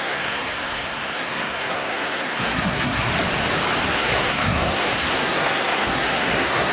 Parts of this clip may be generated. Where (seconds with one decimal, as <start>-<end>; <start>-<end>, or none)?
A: 0.0-3.1; 3.9-6.7